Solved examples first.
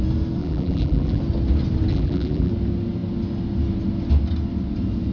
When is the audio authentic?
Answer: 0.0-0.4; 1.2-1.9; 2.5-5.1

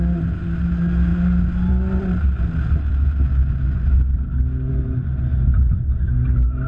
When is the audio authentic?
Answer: 0.0-6.7

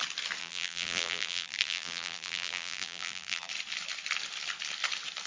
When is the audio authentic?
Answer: 0.0-0.4; 3.5-5.3